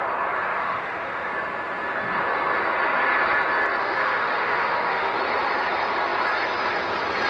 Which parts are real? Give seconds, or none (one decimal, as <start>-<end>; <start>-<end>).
0.0-0.6; 1.3-3.8; 5.2-7.3

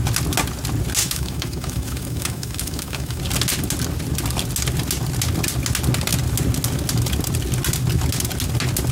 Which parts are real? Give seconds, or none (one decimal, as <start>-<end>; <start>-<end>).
0.0-1.0; 3.2-8.9

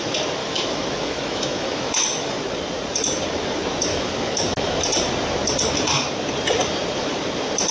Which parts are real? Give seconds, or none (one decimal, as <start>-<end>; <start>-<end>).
0.0-0.4; 2.4-3.9; 4.8-7.7

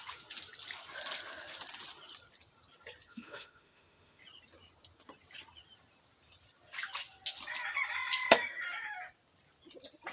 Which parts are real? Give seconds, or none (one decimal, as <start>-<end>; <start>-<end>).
0.0-3.1; 4.2-10.1

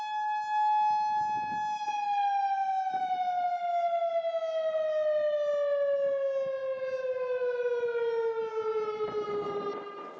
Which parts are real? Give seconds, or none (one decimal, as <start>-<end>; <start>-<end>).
0.0-10.2

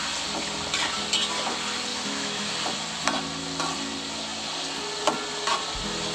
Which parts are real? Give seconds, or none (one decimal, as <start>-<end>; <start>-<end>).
0.0-1.9; 2.5-6.1